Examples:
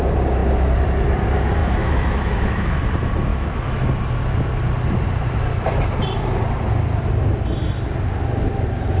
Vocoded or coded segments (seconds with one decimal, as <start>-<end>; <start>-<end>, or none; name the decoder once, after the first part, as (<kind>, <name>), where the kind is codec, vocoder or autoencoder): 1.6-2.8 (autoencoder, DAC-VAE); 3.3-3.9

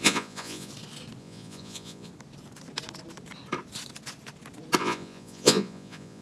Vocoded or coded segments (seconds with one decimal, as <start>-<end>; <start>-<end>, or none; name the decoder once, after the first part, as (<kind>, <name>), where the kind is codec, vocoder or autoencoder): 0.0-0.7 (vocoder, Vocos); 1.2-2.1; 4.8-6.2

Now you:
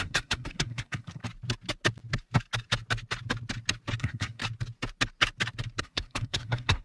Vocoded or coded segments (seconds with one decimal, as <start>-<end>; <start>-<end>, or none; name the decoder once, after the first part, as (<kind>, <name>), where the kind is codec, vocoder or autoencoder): 0.0-1.2 (codec, SNAC); 4.0-4.4; 5.8-6.8

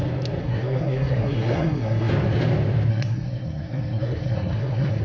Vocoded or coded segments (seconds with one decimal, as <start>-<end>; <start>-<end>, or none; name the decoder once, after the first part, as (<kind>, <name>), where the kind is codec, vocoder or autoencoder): 0.4-2.1 (codec, SNAC); 2.9-5.0

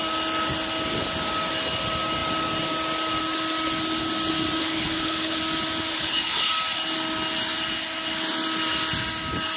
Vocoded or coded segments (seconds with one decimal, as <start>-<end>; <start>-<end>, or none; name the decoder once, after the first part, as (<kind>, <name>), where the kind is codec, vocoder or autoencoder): 4.6-5.4 (codec, HILCodec); 5.9-6.5

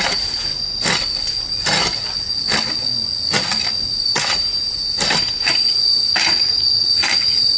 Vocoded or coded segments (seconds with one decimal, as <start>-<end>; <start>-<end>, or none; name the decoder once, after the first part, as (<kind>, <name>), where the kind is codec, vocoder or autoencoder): 0.0-0.5 (vocoder, BigVGAN v2); 3.9-7.6

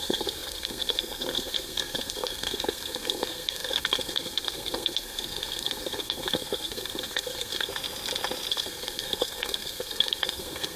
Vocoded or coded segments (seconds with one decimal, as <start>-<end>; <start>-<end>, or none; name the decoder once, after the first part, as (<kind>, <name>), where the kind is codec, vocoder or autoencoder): 0.0-7.7 (codec, SNAC); 8.5-10.8